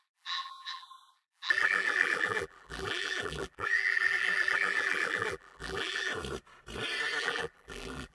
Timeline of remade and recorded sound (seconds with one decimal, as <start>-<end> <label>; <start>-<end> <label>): 0.0-6.1 remade; 6.1-7.2 recorded; 7.2-8.1 remade